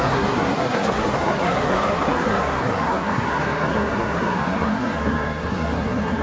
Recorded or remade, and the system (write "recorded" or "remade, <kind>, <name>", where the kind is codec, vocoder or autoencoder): remade, codec, SNAC